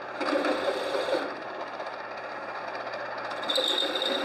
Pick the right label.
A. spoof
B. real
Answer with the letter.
B